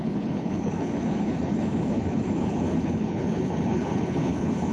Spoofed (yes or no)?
yes